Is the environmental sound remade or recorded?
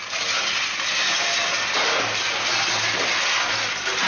recorded